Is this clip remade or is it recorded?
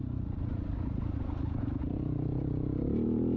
recorded